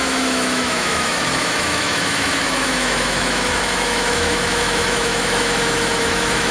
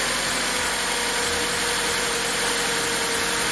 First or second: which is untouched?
second